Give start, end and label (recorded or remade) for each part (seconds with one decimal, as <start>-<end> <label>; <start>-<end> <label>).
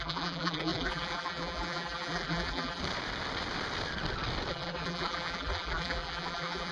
0.0-2.8 remade; 2.8-4.5 recorded; 4.5-6.7 remade